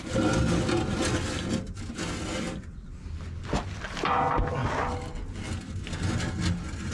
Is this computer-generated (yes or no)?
no